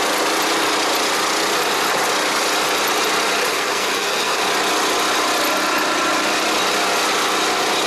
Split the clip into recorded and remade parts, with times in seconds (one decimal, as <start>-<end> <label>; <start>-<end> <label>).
0.0-3.5 recorded; 3.5-4.4 remade; 4.4-7.9 recorded